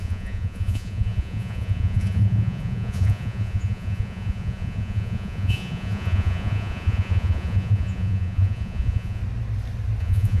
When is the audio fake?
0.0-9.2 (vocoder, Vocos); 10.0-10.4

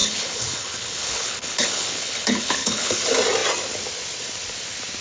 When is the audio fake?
0.0-3.0 (codec, HILCodec)

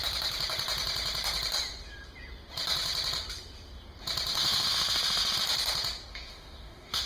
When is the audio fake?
4.3-5.2 (autoencoder, DAC-VAE); 6.1-7.1

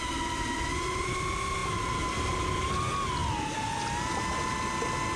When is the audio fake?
none

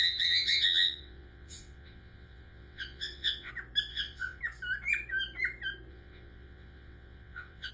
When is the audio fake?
0.0-3.5 (vocoder, WaveNeXt); 3.9-4.4; 5.9-7.7

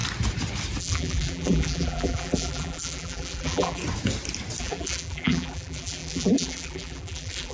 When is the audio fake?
0.8-3.8 (vocoder, BigVGAN v2); 4.6-7.5

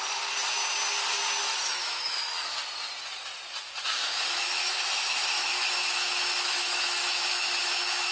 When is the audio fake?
1.4-2.6 (autoencoder, DAC-VAE); 4.0-8.1

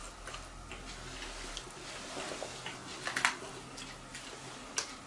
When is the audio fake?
none